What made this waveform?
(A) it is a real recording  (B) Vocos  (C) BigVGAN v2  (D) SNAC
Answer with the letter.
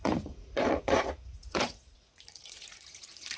B